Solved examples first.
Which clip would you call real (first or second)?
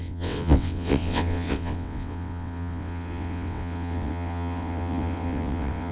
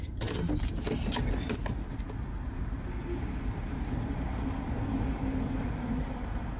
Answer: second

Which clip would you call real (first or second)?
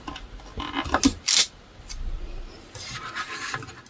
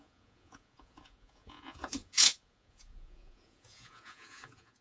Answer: first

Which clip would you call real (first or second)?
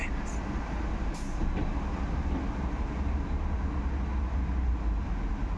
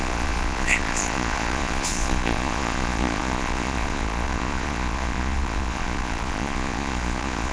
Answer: first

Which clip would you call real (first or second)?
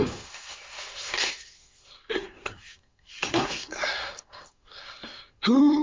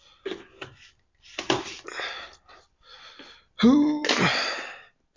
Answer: second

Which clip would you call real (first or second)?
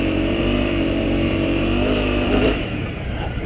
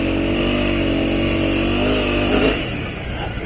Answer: second